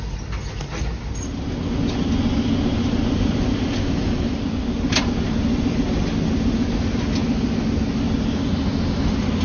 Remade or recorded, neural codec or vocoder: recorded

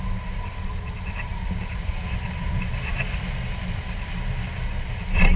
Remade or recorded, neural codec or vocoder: recorded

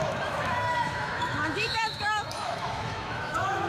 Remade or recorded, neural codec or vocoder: remade, autoencoder, DAC-VAE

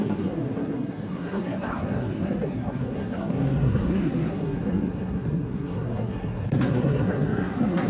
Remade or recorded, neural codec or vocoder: remade, codec, SNAC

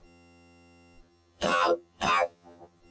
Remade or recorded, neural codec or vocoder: remade, vocoder, HiFi-GAN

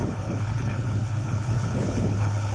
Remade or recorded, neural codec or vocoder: remade, codec, HILCodec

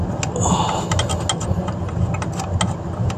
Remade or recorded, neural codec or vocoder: recorded